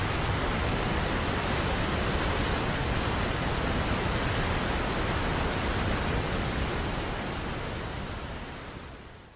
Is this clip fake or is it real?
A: real